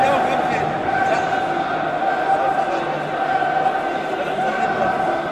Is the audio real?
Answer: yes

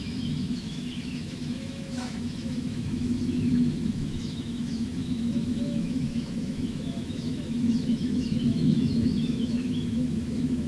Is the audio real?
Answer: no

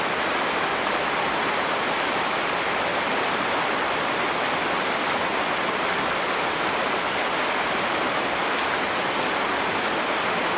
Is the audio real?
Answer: yes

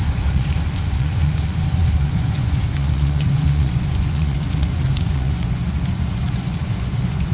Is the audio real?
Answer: no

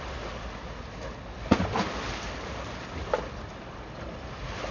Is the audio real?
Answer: yes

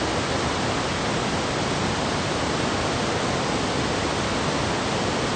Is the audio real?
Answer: yes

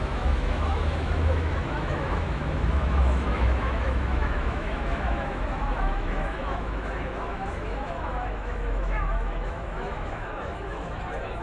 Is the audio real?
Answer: no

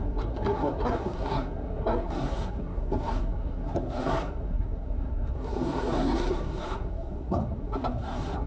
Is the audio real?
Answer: no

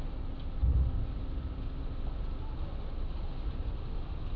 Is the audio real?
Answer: yes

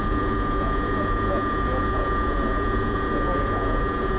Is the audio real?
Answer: no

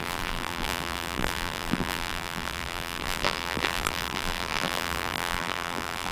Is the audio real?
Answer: no